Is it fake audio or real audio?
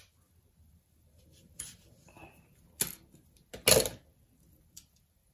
real